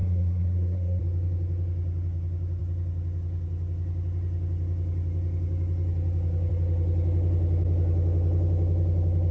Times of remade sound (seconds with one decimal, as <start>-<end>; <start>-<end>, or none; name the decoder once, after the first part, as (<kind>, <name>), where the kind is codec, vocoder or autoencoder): 0.0-1.0 (codec, SNAC)